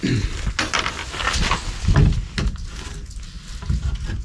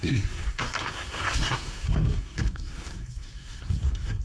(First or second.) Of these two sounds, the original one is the first